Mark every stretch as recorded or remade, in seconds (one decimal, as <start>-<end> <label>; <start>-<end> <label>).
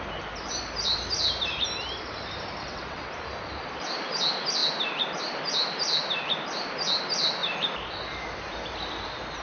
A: 0.0-2.6 recorded; 2.6-3.1 remade; 3.1-9.4 recorded